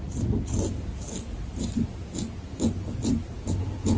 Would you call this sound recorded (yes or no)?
yes